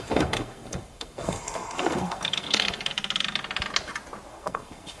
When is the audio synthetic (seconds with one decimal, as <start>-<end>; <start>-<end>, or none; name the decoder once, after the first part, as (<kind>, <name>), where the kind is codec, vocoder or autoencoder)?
0.0-2.9 (codec, SNAC); 4.3-5.0